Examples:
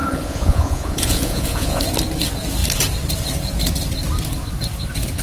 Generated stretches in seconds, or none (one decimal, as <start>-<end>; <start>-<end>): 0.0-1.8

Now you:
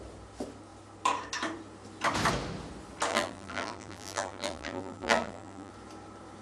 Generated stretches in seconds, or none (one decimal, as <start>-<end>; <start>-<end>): 3.1-5.7

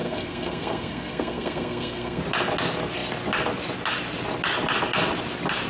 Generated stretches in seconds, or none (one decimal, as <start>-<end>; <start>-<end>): 0.0-2.2

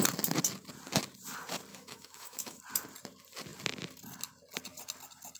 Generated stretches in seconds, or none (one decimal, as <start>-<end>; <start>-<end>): 1.7-2.6